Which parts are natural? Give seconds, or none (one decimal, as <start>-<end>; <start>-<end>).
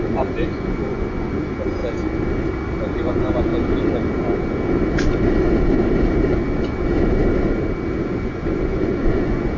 1.8-2.8; 3.5-8.0